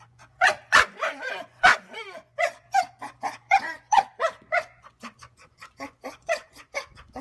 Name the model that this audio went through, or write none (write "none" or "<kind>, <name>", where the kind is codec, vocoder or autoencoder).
vocoder, Vocos